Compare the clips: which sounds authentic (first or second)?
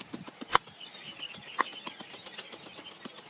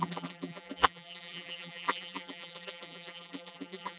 first